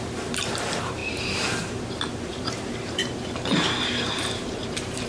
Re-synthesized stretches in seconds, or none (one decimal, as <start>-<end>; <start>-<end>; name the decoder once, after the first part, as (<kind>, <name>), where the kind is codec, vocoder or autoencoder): 0.0-5.1 (vocoder, BigVGAN v2)